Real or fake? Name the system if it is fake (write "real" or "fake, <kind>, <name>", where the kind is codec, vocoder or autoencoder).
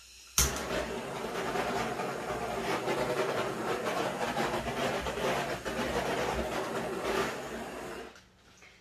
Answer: real